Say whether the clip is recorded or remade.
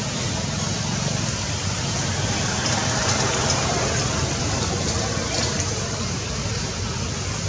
recorded